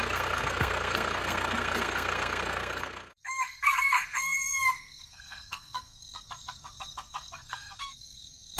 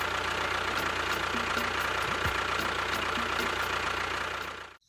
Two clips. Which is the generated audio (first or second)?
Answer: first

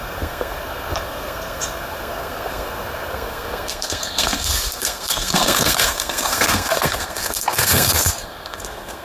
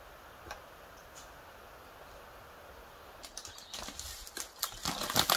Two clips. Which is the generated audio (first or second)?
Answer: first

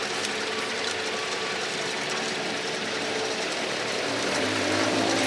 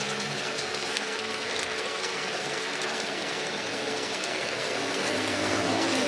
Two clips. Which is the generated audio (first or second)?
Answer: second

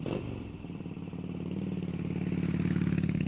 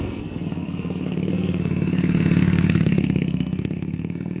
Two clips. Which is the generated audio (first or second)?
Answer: second